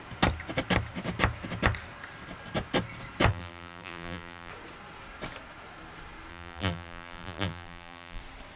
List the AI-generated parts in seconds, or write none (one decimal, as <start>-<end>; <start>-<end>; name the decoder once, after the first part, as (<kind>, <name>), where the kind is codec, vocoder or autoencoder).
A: 3.3-4.5 (vocoder, BigVGAN v2); 6.3-8.2

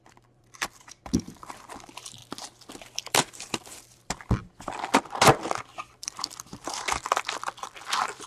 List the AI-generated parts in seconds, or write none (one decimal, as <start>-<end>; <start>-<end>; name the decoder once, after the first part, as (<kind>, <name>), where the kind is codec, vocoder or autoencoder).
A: 0.0-2.2 (vocoder, BigVGAN v2); 2.8-8.3

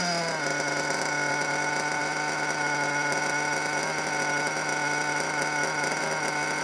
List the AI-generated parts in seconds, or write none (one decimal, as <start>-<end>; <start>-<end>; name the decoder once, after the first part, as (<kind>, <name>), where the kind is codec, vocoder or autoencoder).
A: none

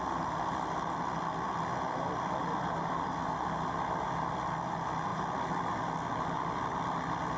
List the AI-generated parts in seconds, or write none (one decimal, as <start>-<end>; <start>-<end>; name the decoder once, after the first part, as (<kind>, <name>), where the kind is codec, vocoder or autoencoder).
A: none